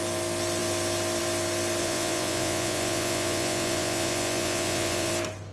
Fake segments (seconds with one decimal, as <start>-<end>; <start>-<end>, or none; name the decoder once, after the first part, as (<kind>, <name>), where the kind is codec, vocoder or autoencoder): 1.8-5.1 (vocoder, Vocos)